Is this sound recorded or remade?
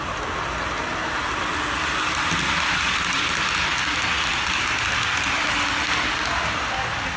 recorded